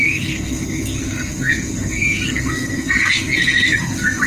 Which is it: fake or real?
fake